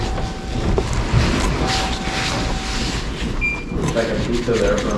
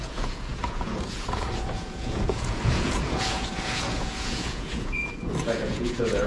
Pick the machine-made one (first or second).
second